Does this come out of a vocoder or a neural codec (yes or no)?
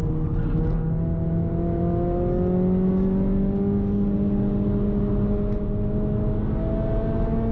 no